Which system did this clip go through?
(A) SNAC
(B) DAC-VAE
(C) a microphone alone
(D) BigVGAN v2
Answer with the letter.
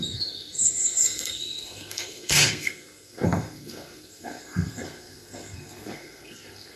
A